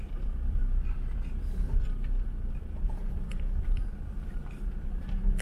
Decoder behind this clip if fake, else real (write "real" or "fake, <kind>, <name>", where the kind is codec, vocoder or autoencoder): fake, vocoder, BigVGAN v2